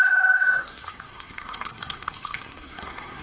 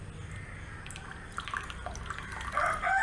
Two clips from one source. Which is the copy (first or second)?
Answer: first